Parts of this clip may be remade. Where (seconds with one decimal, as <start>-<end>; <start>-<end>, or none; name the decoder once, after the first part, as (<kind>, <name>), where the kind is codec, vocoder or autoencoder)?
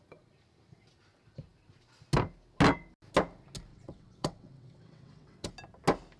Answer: 3.7-5.5 (vocoder, WaveNeXt)